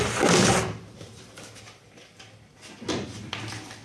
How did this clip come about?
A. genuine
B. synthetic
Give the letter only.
B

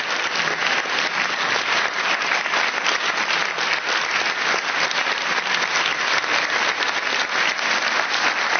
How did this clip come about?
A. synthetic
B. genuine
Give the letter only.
B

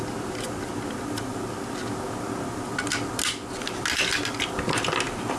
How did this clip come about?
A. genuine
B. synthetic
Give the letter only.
A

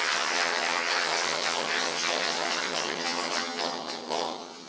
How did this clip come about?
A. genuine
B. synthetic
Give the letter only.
B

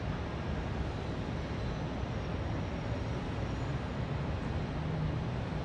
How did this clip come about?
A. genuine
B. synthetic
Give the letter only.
A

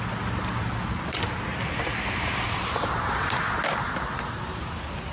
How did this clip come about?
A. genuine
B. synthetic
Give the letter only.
A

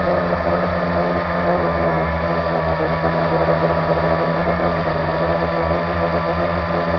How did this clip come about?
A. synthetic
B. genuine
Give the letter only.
B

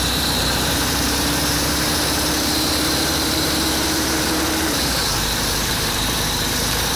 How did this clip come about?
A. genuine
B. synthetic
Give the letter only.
B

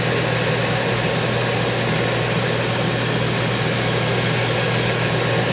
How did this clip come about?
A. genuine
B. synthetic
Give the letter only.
A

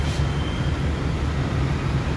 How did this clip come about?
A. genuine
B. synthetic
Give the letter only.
A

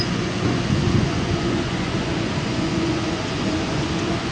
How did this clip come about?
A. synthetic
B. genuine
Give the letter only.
A